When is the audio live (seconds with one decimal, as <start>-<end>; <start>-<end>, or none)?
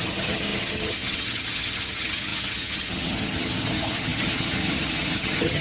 none